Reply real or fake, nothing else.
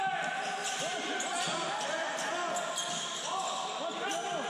real